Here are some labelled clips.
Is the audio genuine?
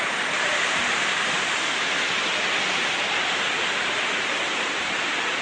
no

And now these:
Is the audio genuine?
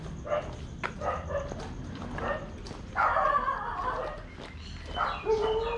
yes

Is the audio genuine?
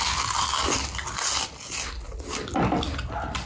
yes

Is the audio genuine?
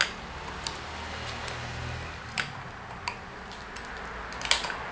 yes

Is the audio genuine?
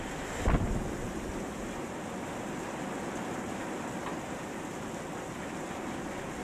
yes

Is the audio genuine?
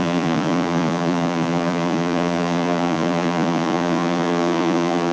no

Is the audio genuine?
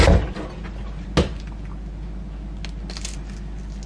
yes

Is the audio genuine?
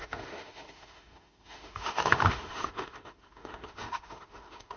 no